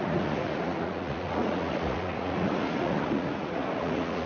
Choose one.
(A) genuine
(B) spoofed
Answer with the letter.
B